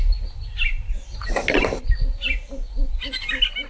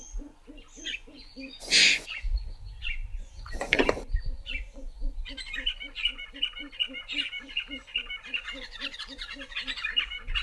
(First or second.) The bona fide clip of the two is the first